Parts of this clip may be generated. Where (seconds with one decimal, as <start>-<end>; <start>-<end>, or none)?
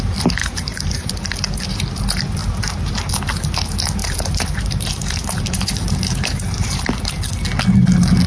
0.4-1.1; 2.4-3.1; 4.0-6.8